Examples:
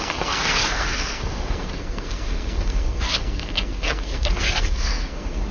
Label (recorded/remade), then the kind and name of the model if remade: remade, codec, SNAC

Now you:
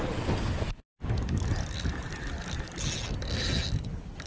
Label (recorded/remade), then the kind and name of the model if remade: recorded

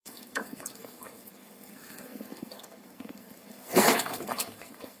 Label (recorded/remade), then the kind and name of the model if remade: remade, codec, SNAC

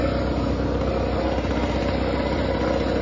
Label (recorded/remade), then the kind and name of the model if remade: recorded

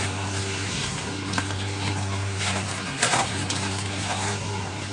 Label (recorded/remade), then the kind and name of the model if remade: remade, codec, SNAC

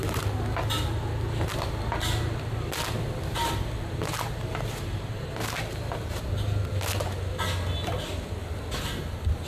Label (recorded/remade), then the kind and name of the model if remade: recorded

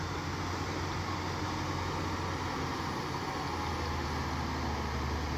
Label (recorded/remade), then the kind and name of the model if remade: recorded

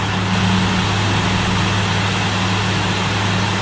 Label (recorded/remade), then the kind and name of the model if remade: recorded